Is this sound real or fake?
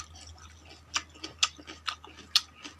real